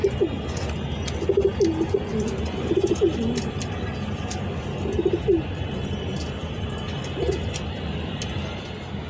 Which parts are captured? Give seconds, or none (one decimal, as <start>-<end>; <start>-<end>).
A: 0.0-9.1